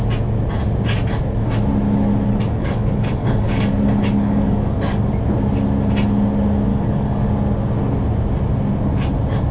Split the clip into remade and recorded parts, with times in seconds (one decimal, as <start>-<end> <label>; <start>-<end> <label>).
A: 0.0-2.3 recorded; 2.3-5.0 remade; 5.0-6.7 recorded; 6.7-7.3 remade; 7.3-9.5 recorded